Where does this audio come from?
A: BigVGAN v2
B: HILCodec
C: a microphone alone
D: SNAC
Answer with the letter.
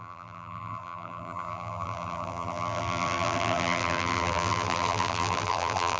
A